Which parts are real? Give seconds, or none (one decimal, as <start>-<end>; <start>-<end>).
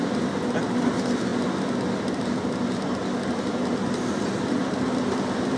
0.0-5.6